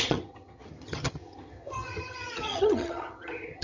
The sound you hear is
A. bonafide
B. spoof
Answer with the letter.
B